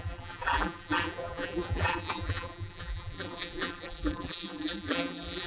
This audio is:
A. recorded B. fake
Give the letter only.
B